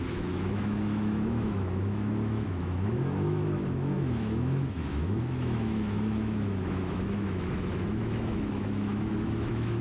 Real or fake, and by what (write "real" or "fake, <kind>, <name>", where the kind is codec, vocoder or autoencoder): fake, autoencoder, DAC-VAE